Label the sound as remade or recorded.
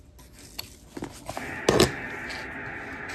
recorded